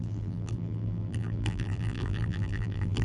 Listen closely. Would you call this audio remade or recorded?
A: remade